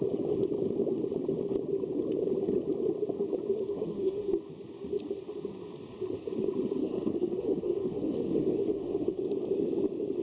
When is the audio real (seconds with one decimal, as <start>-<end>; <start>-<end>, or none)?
0.0-3.7; 4.3-6.8; 9.2-10.2